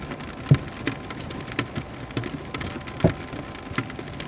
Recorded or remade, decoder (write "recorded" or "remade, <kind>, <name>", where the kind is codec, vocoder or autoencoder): recorded